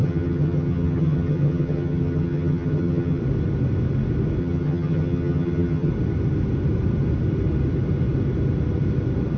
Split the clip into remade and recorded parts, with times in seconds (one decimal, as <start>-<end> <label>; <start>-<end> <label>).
0.0-3.2 remade; 3.2-4.4 recorded; 4.4-5.9 remade; 5.9-9.4 recorded